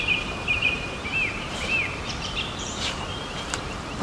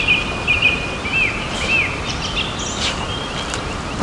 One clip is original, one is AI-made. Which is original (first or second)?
second